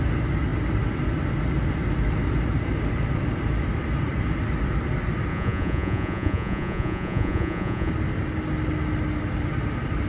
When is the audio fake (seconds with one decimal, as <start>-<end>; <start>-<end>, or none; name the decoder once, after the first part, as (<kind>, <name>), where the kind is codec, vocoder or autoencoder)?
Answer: 5.3-7.9 (vocoder, Vocos)